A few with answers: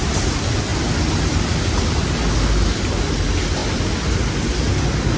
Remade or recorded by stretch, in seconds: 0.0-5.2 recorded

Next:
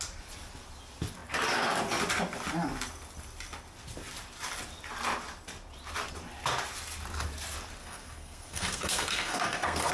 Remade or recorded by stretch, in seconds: 0.0-7.8 recorded; 7.8-9.9 remade

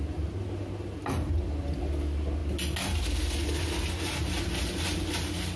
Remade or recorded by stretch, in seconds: 0.0-5.6 recorded